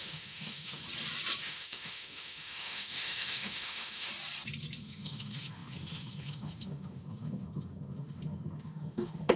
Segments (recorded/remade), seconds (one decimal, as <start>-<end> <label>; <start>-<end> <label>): 0.0-0.8 remade; 0.8-1.4 recorded; 1.4-4.1 remade; 4.1-4.8 recorded; 4.8-9.4 remade